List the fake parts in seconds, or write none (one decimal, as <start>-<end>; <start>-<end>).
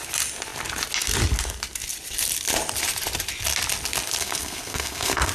4.2-5.3